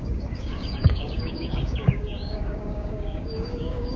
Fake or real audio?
fake